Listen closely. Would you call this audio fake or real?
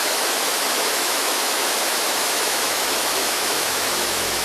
fake